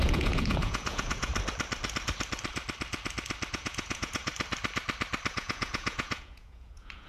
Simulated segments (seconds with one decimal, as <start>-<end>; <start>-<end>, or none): 0.0-1.3; 3.5-4.3; 5.3-7.1